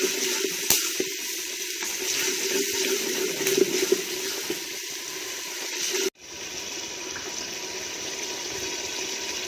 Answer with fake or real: real